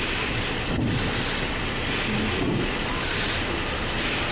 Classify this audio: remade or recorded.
recorded